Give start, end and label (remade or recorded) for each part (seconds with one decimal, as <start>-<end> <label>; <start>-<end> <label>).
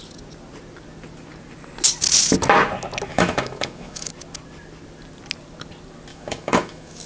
0.0-3.1 recorded; 3.1-4.1 remade; 4.1-6.1 recorded; 6.1-7.1 remade